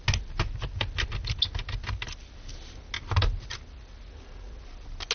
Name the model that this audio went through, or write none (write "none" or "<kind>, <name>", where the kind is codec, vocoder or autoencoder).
none